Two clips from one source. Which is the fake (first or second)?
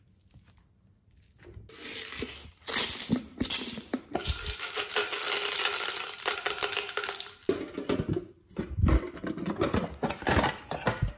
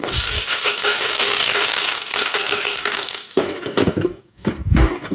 second